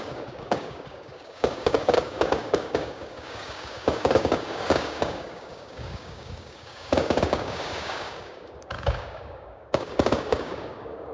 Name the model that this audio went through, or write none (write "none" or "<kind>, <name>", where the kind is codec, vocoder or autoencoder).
codec, DAC